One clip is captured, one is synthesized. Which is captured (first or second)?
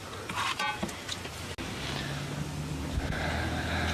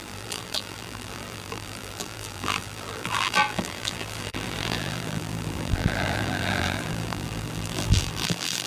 first